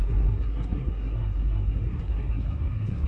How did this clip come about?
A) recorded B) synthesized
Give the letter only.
B